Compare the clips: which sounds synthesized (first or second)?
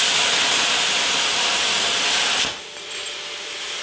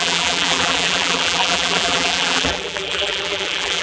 second